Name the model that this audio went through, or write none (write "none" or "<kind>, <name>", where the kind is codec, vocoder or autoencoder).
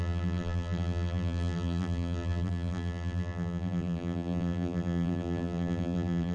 vocoder, BigVGAN v2